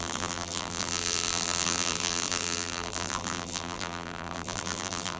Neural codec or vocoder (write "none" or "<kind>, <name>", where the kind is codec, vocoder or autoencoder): vocoder, BigVGAN v2